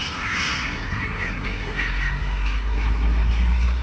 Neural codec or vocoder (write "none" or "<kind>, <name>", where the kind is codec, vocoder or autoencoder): codec, SNAC